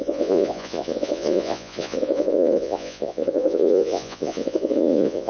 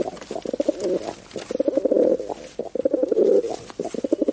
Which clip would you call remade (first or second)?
first